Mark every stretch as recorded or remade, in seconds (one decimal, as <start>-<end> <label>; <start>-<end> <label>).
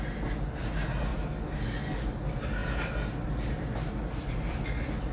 0.0-5.1 recorded